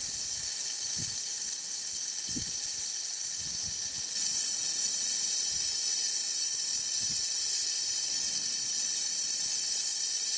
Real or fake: real